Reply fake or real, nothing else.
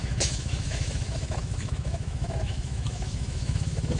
fake